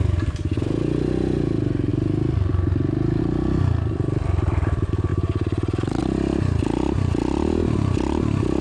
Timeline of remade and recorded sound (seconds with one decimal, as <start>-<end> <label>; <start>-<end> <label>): 0.0-8.6 recorded